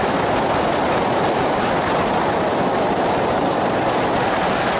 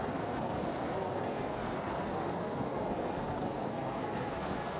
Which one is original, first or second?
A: first